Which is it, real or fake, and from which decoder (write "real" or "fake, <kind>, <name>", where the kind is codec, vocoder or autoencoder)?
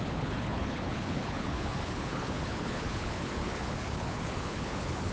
fake, codec, HILCodec